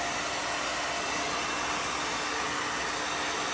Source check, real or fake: real